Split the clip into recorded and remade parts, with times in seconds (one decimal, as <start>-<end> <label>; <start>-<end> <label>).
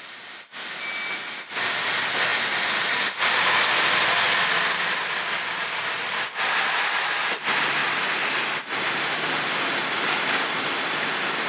0.0-11.5 recorded